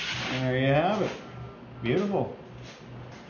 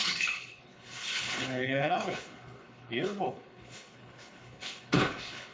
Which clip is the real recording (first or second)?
first